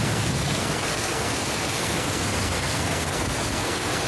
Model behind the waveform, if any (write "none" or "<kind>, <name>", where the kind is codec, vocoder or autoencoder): codec, SNAC